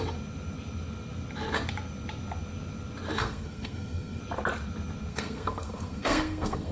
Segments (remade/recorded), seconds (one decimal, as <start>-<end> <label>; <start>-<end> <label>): 0.0-3.2 recorded; 3.2-4.2 remade; 4.2-5.1 recorded; 5.1-6.7 remade